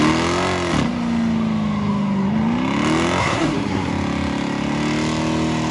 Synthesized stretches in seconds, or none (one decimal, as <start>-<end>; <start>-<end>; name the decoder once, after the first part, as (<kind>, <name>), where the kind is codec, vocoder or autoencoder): 3.2-3.9 (codec, SNAC)